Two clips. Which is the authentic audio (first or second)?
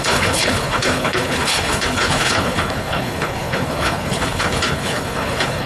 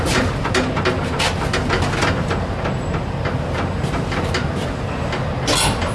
second